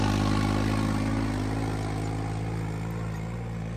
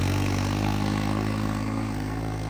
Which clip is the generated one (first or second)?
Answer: second